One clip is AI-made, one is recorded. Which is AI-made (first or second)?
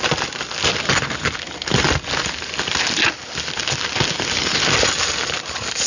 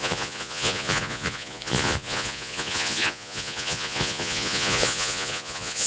second